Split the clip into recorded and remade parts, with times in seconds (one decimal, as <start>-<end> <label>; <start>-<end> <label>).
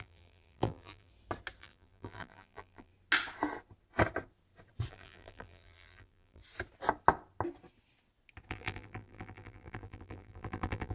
0.0-1.1 remade; 1.1-1.6 recorded; 1.6-2.9 remade; 2.9-4.9 recorded; 4.9-6.4 remade; 6.4-8.5 recorded; 8.5-10.9 remade